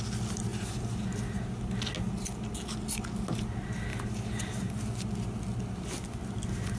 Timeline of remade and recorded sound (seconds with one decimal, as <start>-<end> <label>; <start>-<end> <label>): 0.0-0.5 recorded; 0.5-1.5 remade; 1.5-3.9 recorded; 3.9-4.7 remade; 4.7-6.8 recorded